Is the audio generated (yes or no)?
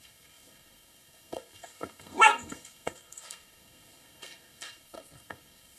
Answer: yes